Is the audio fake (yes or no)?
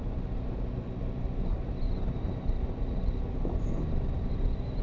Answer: no